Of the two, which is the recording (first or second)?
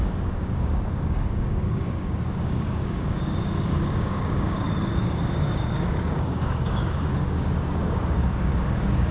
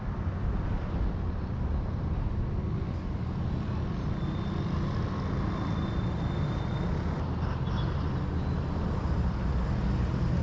second